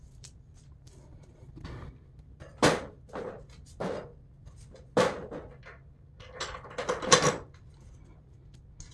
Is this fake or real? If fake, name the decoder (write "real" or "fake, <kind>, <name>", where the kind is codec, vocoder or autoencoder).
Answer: real